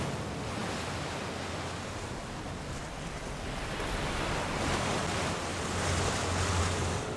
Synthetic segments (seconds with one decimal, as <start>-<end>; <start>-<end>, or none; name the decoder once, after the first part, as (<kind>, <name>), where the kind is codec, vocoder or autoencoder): none